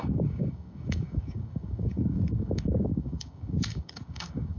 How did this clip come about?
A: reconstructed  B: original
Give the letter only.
A